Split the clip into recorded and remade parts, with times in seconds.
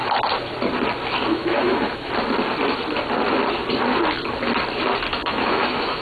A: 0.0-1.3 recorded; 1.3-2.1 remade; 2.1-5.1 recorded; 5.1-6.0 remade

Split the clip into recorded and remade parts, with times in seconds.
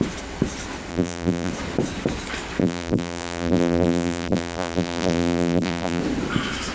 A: 0.0-0.9 recorded; 0.9-1.5 remade; 1.5-2.6 recorded; 2.6-6.0 remade; 6.0-6.7 recorded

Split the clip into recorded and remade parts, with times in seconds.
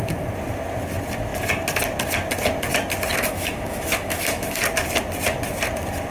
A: 0.0-3.1 recorded; 3.1-4.6 remade; 4.6-6.1 recorded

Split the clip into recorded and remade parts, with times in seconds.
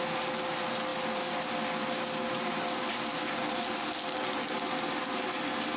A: 0.0-5.8 recorded